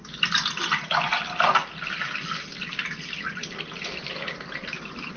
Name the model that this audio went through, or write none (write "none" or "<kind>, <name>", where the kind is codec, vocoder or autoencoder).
none